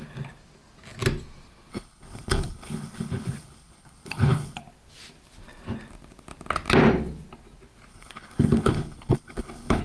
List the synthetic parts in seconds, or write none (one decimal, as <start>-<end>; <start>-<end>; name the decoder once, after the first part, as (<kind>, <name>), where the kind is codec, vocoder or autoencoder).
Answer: 1.7-4.6 (codec, HILCodec); 7.9-9.8